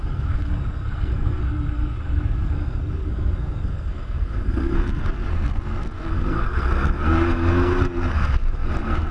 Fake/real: fake